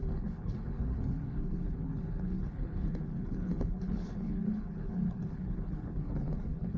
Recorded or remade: remade